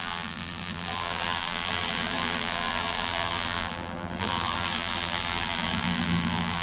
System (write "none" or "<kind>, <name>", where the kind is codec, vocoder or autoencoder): vocoder, BigVGAN v2